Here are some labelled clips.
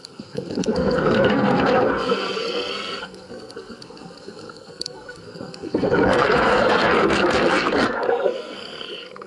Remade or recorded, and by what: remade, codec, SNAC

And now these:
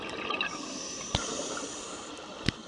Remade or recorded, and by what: recorded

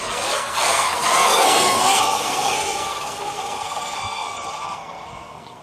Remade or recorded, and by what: remade, codec, SNAC